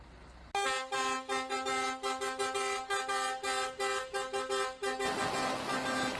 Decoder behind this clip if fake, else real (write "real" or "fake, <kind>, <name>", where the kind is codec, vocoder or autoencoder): real